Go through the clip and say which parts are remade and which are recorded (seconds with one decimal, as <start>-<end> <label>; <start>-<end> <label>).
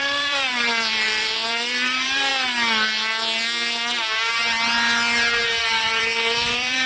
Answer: 0.0-2.3 remade; 2.3-5.6 recorded; 5.6-6.9 remade